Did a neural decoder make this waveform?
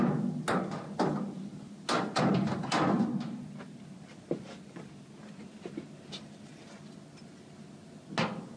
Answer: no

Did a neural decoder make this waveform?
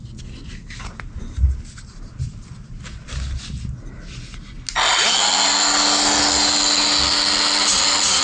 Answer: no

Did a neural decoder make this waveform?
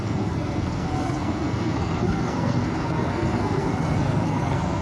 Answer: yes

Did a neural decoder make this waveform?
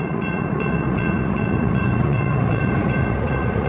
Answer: yes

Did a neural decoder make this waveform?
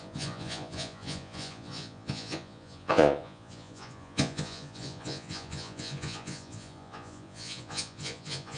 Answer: yes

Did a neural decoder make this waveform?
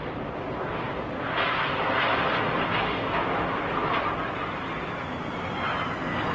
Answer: no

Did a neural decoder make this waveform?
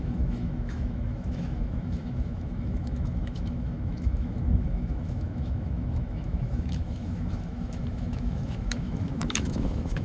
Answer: yes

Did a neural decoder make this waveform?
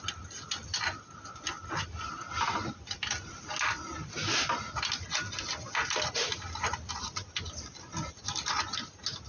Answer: no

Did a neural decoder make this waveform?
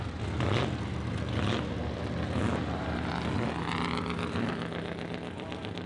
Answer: no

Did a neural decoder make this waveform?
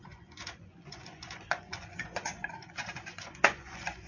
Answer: yes